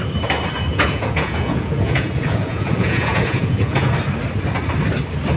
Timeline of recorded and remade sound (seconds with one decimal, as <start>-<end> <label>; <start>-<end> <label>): 0.0-0.7 recorded; 0.7-3.9 remade; 3.9-5.4 recorded